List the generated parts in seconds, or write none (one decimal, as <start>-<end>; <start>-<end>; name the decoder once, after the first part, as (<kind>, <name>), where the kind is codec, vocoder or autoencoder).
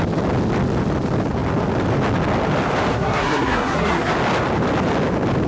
2.9-4.1 (codec, SNAC)